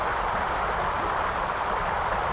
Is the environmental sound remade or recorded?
recorded